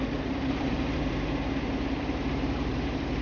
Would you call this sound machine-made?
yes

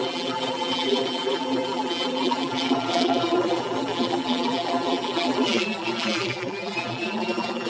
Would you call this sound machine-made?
yes